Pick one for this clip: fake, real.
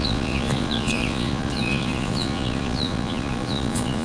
fake